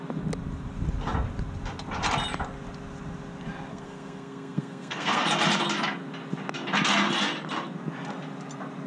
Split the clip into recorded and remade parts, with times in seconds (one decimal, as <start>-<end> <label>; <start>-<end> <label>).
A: 0.0-3.7 recorded; 3.7-5.3 remade; 5.3-8.9 recorded